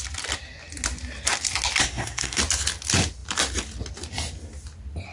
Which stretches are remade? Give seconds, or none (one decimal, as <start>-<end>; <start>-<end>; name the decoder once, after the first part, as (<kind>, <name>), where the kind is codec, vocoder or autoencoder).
1.8-2.4 (codec, SNAC)